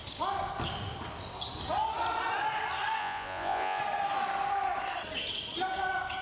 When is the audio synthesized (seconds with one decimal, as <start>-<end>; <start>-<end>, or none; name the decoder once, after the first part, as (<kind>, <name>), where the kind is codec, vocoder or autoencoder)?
3.0-3.8 (vocoder, Vocos)